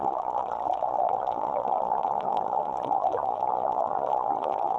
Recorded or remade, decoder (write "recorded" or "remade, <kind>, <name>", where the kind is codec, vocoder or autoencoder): remade, vocoder, Vocos